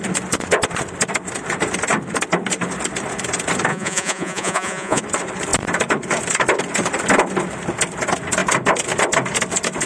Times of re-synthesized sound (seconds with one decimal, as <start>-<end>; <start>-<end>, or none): 3.7-5.0